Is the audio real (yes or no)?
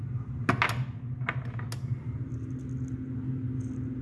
yes